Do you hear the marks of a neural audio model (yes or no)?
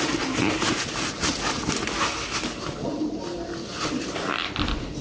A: yes